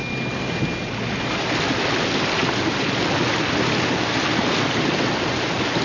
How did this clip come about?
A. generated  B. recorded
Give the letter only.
B